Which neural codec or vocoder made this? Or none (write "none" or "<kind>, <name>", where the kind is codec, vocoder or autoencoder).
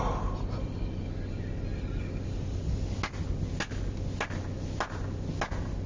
none